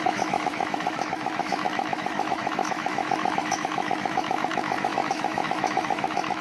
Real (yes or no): no